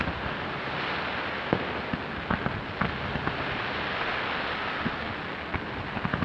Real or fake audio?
real